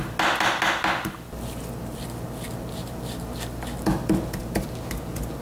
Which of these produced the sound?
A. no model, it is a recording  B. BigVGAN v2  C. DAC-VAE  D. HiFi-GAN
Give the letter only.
A